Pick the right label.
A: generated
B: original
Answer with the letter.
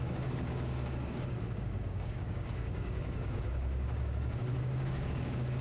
A